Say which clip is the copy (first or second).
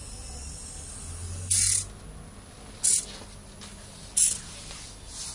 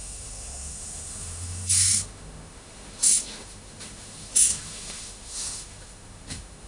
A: second